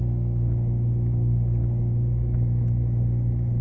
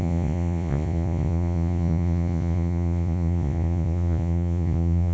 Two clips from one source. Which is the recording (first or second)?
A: first